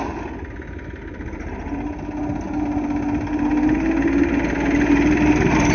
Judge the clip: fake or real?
real